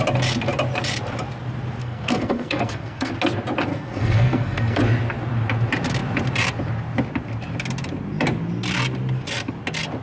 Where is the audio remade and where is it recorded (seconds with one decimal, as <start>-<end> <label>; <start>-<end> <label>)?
0.0-1.8 recorded; 1.8-3.1 remade; 3.1-3.7 recorded; 3.7-4.8 remade; 4.8-10.0 recorded